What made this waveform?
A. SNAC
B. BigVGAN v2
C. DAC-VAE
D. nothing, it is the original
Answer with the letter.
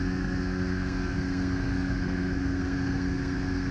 A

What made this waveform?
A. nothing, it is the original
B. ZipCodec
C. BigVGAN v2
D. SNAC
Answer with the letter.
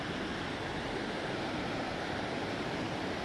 A